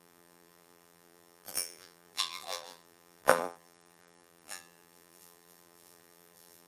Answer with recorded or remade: remade